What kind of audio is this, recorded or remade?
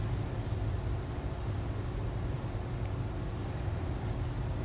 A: recorded